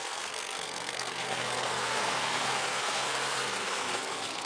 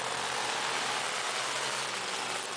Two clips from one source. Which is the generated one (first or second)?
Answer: first